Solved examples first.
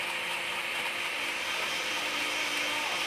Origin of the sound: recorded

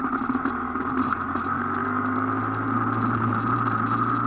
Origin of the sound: recorded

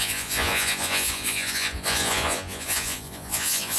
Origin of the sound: remade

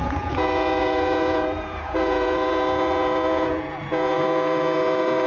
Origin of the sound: remade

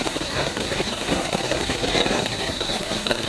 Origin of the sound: remade